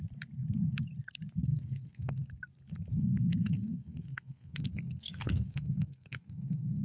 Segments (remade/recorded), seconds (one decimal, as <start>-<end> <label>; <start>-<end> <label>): 0.0-1.5 recorded; 1.5-2.3 remade; 2.3-2.9 recorded; 2.9-6.8 remade